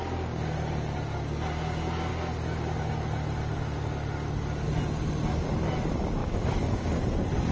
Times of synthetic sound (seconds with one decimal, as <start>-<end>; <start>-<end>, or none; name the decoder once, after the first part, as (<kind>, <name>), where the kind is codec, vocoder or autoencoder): 6.2-6.9 (autoencoder, DAC-VAE)